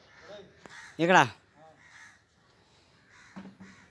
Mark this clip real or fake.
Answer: real